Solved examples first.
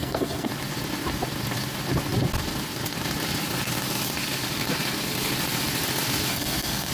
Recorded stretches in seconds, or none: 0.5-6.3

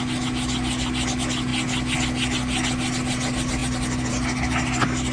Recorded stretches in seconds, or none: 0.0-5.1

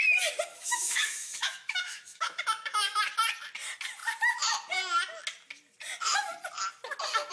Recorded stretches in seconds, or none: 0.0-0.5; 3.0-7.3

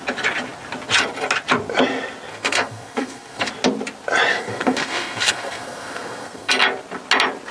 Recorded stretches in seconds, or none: 0.0-2.3; 3.5-4.3; 6.5-7.5